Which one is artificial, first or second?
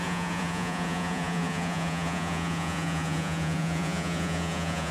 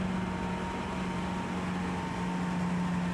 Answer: first